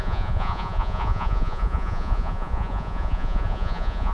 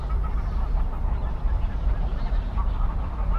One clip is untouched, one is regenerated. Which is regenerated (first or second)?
first